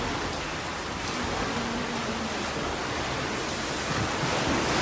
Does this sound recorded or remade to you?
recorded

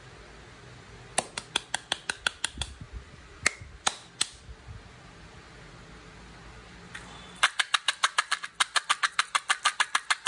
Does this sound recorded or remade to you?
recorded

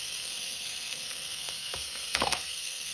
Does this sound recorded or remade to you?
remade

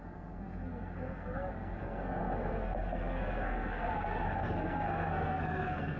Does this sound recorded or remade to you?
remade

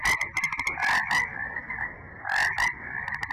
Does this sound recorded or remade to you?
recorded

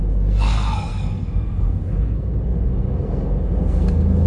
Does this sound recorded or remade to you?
remade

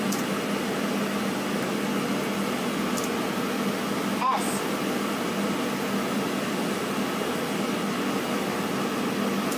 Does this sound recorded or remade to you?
recorded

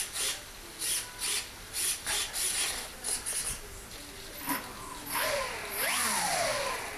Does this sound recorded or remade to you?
recorded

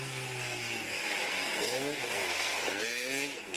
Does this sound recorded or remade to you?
remade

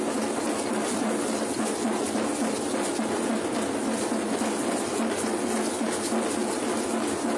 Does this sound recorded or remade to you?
recorded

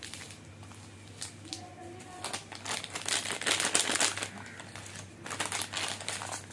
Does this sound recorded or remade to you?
recorded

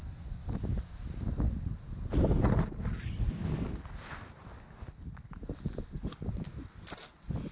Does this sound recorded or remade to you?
recorded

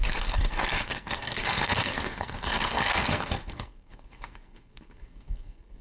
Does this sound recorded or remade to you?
remade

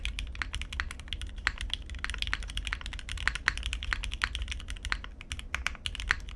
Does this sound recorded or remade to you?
recorded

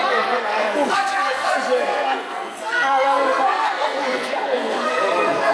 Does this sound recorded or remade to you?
remade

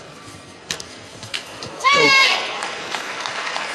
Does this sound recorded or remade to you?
remade